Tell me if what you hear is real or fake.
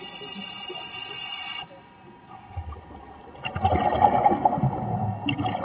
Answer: real